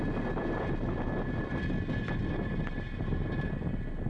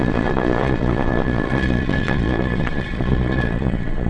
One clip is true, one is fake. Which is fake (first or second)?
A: second